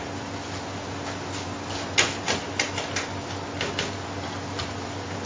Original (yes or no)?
yes